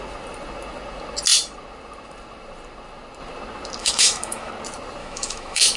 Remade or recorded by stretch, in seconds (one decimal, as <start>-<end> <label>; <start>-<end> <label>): 0.0-3.8 recorded; 3.8-4.5 remade; 4.5-5.0 recorded; 5.0-5.8 remade